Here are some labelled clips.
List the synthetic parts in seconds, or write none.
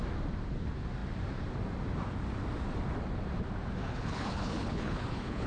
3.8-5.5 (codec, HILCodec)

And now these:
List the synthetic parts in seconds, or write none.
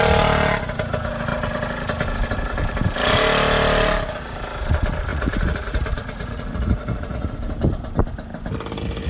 5.1-7.3 (vocoder, Vocos)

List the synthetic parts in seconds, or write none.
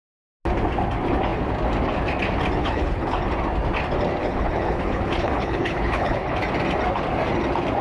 2.6-3.2 (codec, HILCodec); 4.2-6.4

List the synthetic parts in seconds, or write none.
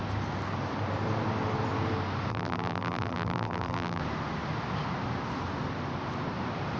2.3-4.0 (vocoder, BigVGAN v2)